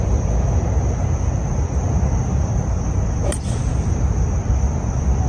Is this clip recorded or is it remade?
recorded